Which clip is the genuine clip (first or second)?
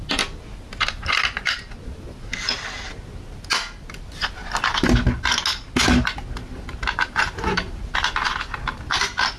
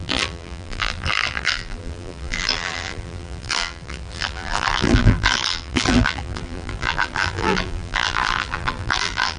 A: first